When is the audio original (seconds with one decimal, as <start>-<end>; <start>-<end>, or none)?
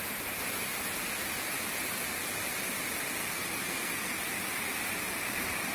0.0-3.2; 4.2-5.7